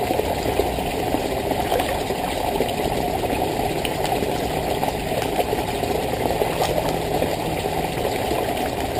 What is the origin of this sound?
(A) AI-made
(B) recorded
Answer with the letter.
B